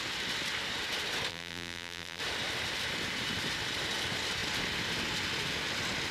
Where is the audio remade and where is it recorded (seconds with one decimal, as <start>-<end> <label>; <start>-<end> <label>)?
0.0-1.3 recorded; 1.3-2.2 remade; 2.2-6.1 recorded